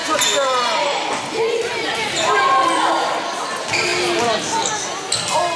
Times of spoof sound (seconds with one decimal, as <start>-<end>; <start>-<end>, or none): none